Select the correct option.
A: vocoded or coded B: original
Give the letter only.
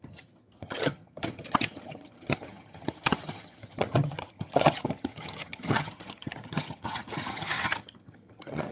A